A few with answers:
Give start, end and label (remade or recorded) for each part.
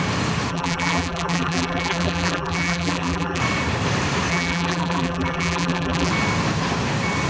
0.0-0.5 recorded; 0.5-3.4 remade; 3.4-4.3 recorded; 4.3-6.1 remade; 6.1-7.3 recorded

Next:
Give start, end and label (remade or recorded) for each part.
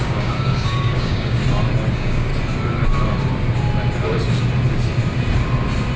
0.0-1.4 remade; 1.4-1.9 recorded; 1.9-2.3 remade; 2.3-6.0 recorded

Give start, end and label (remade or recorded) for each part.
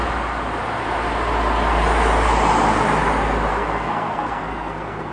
0.0-3.5 recorded; 3.5-5.1 remade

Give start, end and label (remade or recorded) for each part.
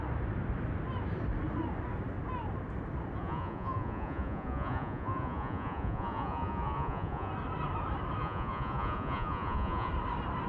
0.0-3.2 recorded; 3.2-7.3 remade; 7.3-8.2 recorded; 8.2-9.9 remade; 9.9-10.5 recorded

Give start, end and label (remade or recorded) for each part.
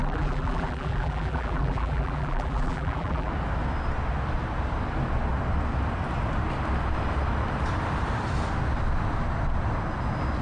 0.0-3.3 remade; 3.3-10.4 recorded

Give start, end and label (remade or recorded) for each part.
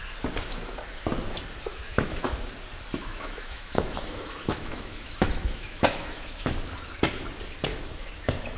0.0-1.7 recorded; 1.7-2.5 remade; 2.5-3.0 recorded; 3.0-6.5 remade; 6.5-7.7 recorded; 7.7-8.2 remade; 8.2-8.6 recorded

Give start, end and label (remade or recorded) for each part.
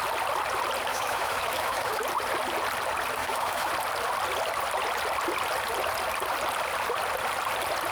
0.0-0.9 recorded; 0.9-2.0 remade; 2.0-3.2 recorded; 3.2-3.7 remade; 3.7-7.9 recorded